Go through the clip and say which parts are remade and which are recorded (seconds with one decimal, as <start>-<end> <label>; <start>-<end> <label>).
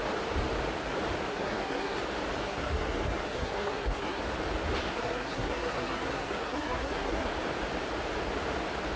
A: 0.0-1.3 recorded; 1.3-2.0 remade; 2.0-2.4 recorded; 2.4-4.2 remade; 4.2-4.9 recorded; 4.9-7.3 remade; 7.3-9.0 recorded